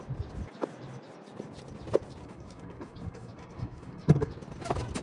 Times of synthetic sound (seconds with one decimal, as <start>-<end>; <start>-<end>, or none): 2.2-4.3